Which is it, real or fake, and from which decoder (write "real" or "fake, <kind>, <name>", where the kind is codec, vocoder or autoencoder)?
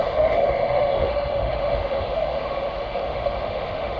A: fake, autoencoder, DAC-VAE